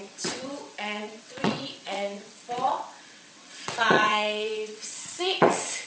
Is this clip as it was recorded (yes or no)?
no